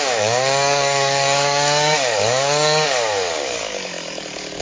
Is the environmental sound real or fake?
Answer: fake